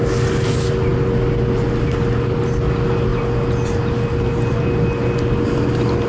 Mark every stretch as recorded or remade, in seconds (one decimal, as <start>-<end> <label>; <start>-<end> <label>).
0.0-6.1 recorded

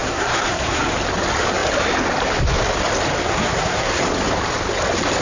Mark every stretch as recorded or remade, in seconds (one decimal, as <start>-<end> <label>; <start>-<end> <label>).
0.0-0.9 remade; 0.9-3.3 recorded; 3.3-4.0 remade; 4.0-5.2 recorded

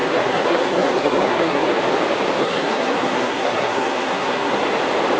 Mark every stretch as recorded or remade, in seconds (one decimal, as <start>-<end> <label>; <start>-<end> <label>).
0.0-1.8 remade; 1.8-2.4 recorded; 2.4-4.6 remade; 4.6-5.2 recorded

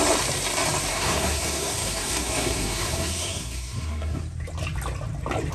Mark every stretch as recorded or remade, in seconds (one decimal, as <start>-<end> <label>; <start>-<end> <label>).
0.0-0.9 recorded; 0.9-4.2 remade; 4.2-5.5 recorded

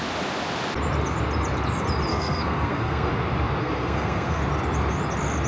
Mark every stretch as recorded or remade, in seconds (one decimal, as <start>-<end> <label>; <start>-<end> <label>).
0.0-2.1 recorded; 2.1-3.1 remade; 3.1-3.6 recorded; 3.6-4.4 remade; 4.4-5.5 recorded